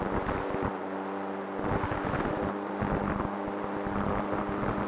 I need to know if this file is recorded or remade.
recorded